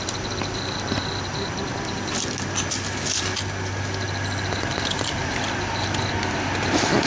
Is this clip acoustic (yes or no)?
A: yes